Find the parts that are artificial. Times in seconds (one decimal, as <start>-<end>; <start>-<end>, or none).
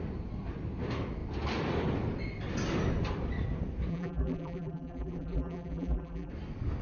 3.9-6.3